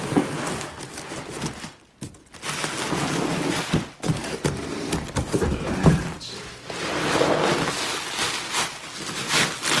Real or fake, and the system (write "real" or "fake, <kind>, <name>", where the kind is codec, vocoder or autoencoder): real